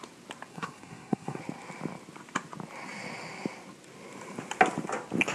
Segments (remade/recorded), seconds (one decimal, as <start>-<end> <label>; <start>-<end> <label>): 0.0-0.5 recorded; 0.5-1.4 remade; 1.4-5.3 recorded

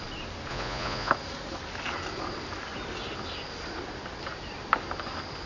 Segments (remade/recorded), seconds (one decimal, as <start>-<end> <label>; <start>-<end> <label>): 0.0-0.5 recorded; 0.5-1.1 remade; 1.1-5.5 recorded

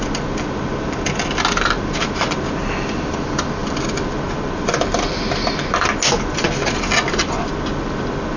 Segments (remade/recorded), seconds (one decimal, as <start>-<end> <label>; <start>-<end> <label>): 0.0-8.4 recorded

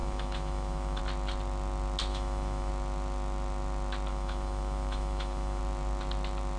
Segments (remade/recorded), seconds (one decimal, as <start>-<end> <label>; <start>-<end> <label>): 0.0-1.0 remade; 1.0-2.1 recorded; 2.1-2.7 remade; 2.7-4.1 recorded; 4.1-5.6 remade; 5.6-6.6 recorded